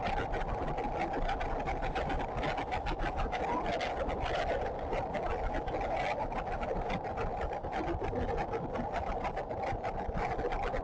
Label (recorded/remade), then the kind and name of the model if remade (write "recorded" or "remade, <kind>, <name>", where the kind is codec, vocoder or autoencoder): recorded